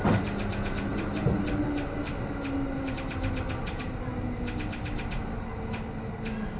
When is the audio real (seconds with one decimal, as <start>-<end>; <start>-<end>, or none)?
0.0-6.6